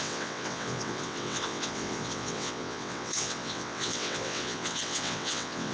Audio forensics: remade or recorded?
remade